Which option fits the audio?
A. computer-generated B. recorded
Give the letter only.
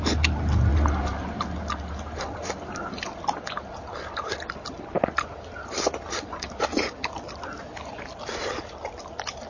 B